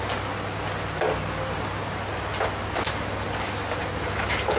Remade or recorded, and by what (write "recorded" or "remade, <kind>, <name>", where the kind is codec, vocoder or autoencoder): recorded